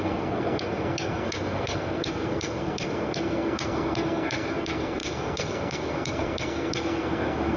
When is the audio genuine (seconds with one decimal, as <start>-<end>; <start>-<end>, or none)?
none